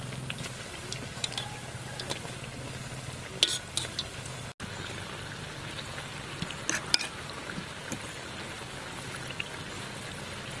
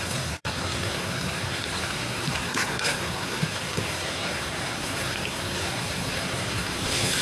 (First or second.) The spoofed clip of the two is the second